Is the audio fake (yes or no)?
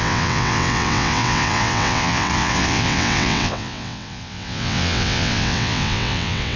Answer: yes